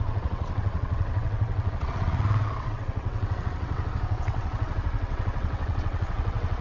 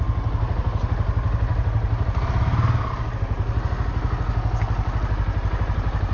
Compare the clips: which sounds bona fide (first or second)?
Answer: second